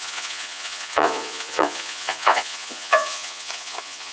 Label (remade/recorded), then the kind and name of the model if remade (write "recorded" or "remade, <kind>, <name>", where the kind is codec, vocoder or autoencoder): remade, vocoder, Vocos